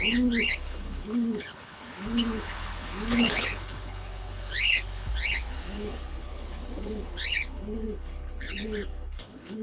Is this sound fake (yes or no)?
yes